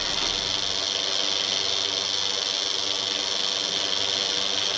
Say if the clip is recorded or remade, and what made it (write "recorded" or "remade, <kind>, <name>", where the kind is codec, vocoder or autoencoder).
recorded